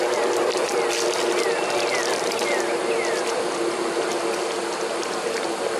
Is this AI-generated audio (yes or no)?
no